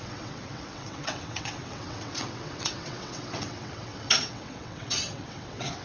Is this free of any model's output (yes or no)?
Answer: no